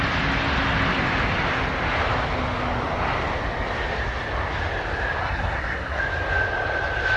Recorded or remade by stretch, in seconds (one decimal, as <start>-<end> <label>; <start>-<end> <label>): 0.0-5.2 recorded; 5.2-6.0 remade; 6.0-7.2 recorded